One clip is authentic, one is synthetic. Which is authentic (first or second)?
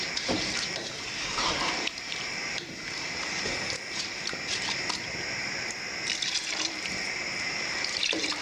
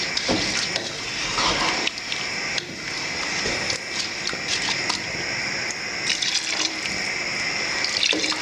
second